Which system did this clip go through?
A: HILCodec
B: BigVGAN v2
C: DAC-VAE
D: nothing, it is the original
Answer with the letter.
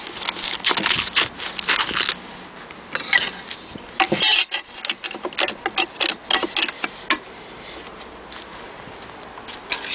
D